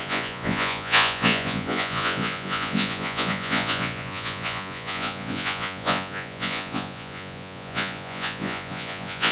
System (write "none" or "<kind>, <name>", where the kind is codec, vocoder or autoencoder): vocoder, Vocos